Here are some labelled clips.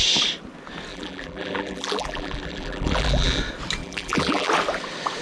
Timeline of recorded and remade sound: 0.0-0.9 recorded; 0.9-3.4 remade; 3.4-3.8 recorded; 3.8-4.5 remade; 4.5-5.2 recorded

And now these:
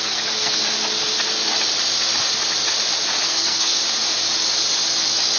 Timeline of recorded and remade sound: 0.0-0.6 remade; 0.6-3.2 recorded; 3.2-3.8 remade; 3.8-5.4 recorded

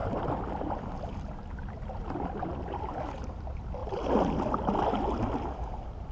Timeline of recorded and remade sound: 0.0-6.1 recorded

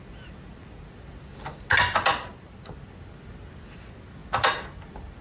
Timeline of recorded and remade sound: 0.0-5.2 recorded

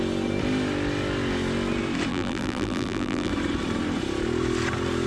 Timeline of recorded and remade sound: 0.0-2.1 recorded; 2.1-3.3 remade; 3.3-5.1 recorded

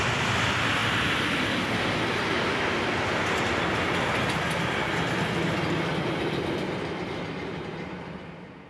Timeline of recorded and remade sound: 0.0-8.7 recorded

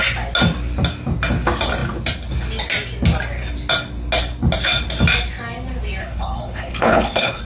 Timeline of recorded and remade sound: 0.0-6.0 recorded; 6.0-7.4 remade